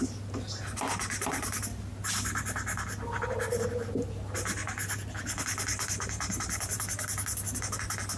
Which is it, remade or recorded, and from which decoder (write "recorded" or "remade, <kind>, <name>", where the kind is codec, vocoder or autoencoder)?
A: recorded